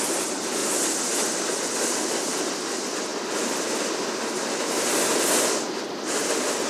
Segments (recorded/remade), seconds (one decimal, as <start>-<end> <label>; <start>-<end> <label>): 0.0-6.7 recorded